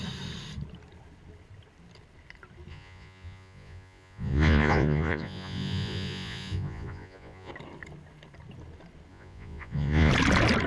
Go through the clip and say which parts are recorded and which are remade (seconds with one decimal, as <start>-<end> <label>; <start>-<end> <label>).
0.0-2.7 recorded; 2.7-7.5 remade; 7.5-9.1 recorded; 9.1-10.1 remade; 10.1-10.7 recorded